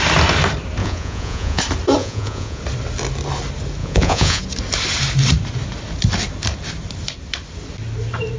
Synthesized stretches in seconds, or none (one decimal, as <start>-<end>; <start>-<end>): 0.8-1.6; 2.0-2.6; 3.8-4.4